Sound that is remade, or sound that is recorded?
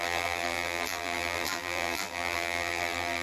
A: remade